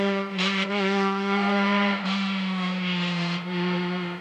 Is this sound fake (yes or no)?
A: yes